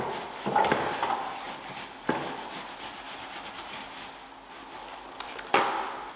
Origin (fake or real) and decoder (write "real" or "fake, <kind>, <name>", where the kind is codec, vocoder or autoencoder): real